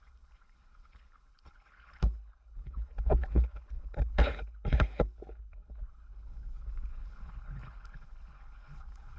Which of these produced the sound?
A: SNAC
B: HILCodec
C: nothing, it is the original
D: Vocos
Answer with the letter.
B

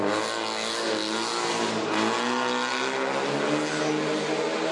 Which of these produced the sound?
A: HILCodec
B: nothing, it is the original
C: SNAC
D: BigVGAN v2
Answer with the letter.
B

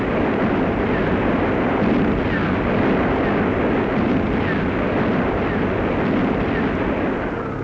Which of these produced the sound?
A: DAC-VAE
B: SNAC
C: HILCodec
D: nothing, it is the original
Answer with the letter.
D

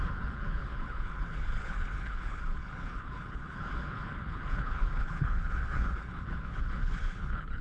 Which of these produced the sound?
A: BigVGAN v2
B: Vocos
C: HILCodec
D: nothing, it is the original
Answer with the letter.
C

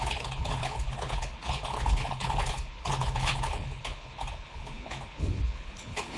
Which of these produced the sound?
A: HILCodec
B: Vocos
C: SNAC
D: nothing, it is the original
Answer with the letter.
A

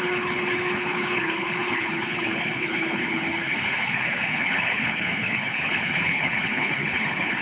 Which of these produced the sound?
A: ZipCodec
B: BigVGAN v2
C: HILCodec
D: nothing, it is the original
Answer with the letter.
C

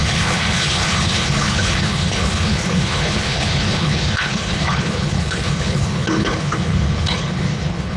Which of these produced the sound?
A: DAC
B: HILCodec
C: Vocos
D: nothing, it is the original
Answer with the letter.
B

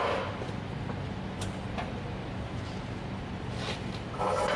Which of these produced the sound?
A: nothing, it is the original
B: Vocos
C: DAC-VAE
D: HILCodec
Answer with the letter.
A